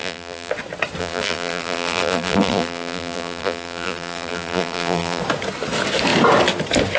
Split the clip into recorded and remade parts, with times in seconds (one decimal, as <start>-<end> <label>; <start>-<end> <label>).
0.0-0.5 remade; 0.5-1.0 recorded; 1.0-5.2 remade; 5.2-7.0 recorded